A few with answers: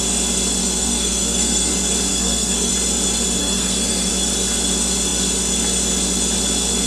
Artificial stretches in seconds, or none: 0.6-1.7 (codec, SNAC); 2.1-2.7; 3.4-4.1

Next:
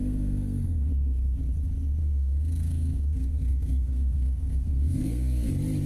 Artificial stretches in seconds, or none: 0.0-0.9 (codec, SNAC); 2.0-5.5

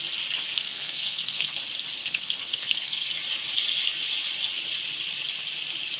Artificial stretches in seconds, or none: 0.5-1.6 (codec, SNAC); 2.0-3.1

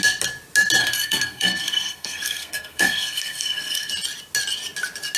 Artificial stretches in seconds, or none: 0.8-3.9 (codec, SNAC)